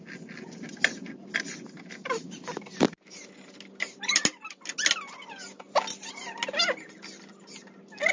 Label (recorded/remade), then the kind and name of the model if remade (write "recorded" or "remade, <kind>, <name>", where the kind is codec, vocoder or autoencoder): recorded